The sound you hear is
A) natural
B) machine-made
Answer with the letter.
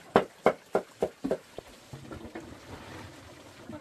A